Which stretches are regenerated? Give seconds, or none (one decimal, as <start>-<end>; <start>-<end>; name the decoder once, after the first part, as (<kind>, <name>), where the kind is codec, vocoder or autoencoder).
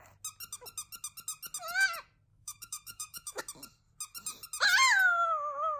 2.3-3.4 (autoencoder, DAC-VAE)